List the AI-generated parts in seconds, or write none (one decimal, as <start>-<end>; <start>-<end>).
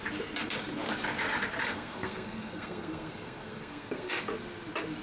1.6-4.1